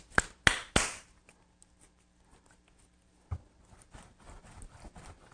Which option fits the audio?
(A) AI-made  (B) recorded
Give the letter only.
B